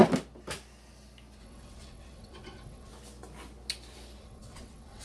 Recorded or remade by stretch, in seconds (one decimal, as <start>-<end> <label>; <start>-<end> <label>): 0.0-1.4 recorded; 1.4-2.9 remade; 2.9-4.2 recorded; 4.2-5.0 remade